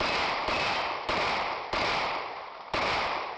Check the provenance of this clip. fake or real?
fake